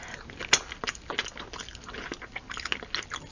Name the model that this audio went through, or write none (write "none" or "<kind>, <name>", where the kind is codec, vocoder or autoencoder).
none